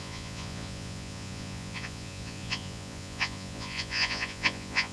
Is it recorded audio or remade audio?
remade